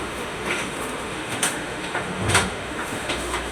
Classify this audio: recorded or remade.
remade